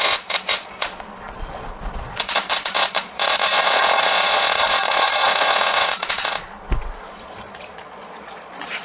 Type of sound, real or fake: fake